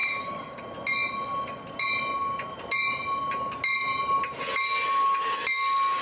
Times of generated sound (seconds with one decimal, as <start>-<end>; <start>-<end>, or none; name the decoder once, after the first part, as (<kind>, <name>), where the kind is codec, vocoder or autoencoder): 0.0-0.6 (codec, DAC)